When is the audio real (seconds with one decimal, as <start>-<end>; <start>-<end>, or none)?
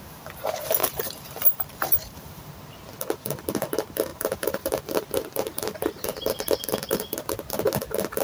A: 0.0-0.8; 2.6-4.1; 7.2-8.2